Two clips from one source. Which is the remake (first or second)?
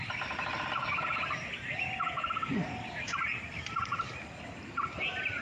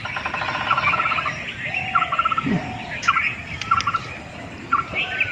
first